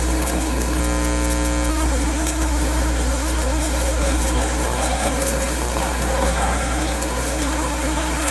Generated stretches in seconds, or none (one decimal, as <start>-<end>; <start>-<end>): 0.0-0.8; 1.7-8.3